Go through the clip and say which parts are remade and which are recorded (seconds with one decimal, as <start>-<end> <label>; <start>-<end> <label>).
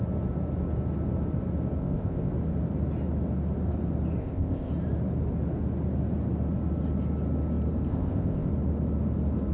0.0-1.8 recorded; 1.8-2.3 remade; 2.3-4.2 recorded; 4.2-4.7 remade; 4.7-7.9 recorded; 7.9-8.5 remade; 8.5-9.5 recorded